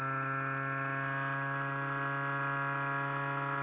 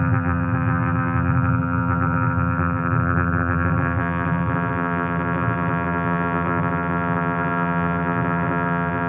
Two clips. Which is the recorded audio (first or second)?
first